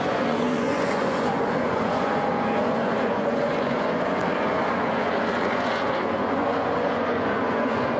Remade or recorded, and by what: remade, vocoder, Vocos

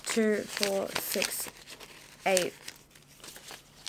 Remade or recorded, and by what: recorded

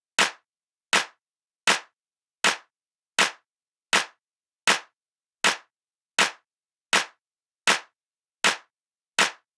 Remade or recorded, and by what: recorded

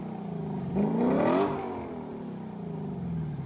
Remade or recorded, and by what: recorded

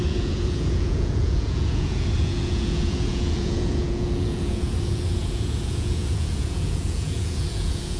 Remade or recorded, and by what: remade, vocoder, Vocos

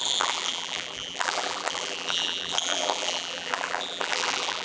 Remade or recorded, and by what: remade, vocoder, BigVGAN v2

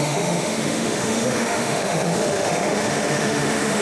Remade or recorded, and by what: remade, autoencoder, DAC-VAE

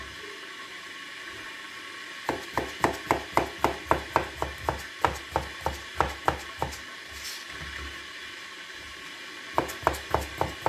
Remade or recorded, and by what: recorded